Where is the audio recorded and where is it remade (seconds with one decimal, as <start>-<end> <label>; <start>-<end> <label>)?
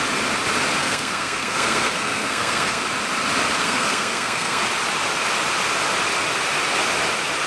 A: 0.0-0.8 recorded; 0.8-2.8 remade; 2.8-3.6 recorded; 3.6-4.6 remade; 4.6-7.5 recorded